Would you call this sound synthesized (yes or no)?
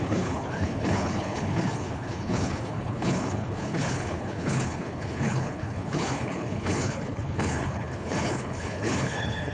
yes